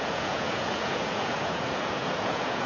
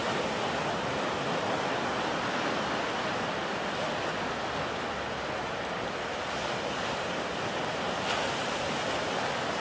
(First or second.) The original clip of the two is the second